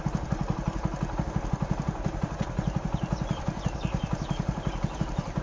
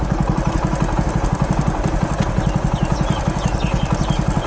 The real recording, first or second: second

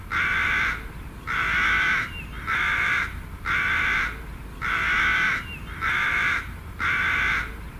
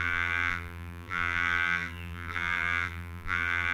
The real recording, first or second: first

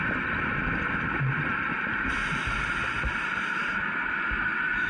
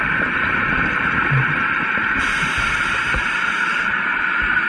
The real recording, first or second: first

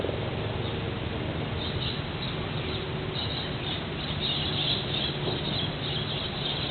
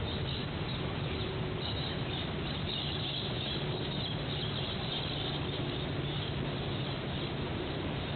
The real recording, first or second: first